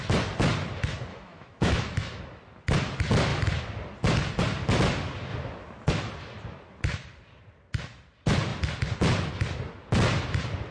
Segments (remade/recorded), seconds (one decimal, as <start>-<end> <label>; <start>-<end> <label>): 0.0-1.1 recorded; 1.1-2.2 remade; 2.2-10.7 recorded